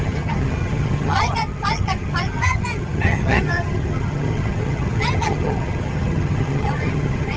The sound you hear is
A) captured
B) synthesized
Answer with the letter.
B